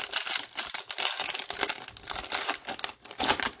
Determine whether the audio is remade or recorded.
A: recorded